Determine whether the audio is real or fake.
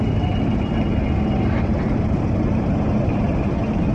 fake